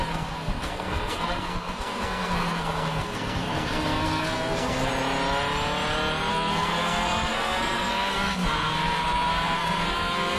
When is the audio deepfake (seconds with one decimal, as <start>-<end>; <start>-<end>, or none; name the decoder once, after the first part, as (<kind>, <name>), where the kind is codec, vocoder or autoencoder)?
0.0-4.9 (codec, SNAC); 6.3-10.4